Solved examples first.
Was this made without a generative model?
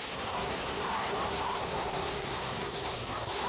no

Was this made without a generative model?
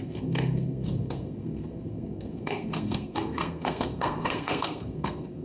no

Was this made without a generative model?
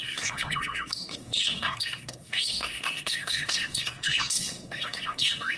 no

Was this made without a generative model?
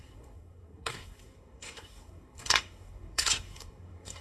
no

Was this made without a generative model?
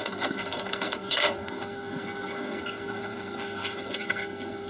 no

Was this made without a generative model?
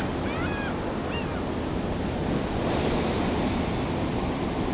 yes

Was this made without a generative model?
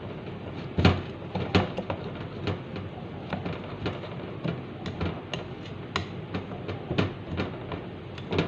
yes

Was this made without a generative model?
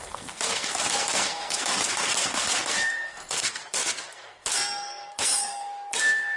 no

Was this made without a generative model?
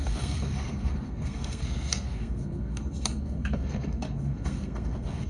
no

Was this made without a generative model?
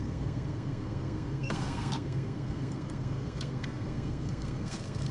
no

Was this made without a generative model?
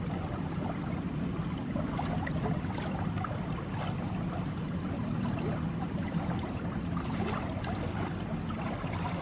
yes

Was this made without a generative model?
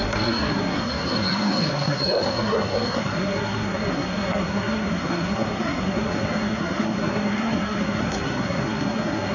no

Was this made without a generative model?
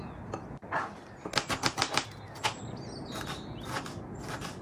yes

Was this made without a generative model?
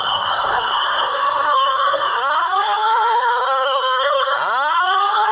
no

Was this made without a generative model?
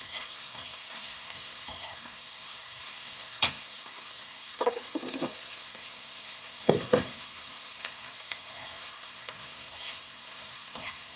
no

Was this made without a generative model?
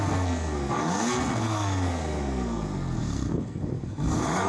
no